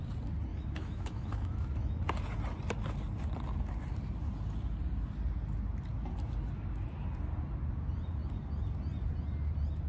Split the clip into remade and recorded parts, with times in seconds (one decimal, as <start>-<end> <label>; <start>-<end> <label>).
0.0-0.5 recorded; 0.5-2.0 remade; 2.0-9.9 recorded